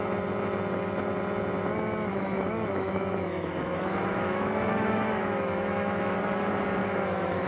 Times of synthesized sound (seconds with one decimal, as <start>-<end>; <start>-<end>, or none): 2.1-6.2; 6.8-7.5